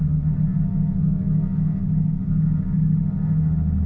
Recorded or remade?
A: recorded